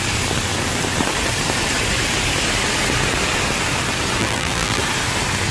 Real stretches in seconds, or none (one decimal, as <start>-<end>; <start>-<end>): 0.0-4.2; 4.8-5.5